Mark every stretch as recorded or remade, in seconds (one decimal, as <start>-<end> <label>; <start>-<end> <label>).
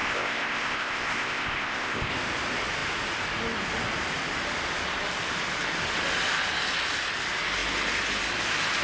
0.0-2.1 remade; 2.1-8.8 recorded